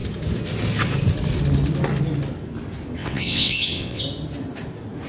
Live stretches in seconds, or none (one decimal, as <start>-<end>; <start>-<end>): 0.0-3.0; 4.0-5.1